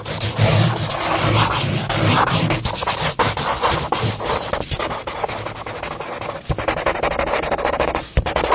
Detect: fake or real real